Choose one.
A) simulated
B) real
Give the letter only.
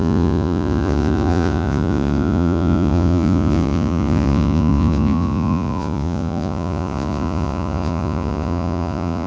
A